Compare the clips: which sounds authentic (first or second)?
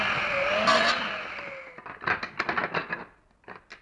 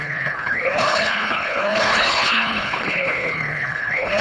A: first